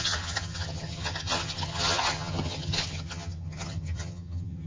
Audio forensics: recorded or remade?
remade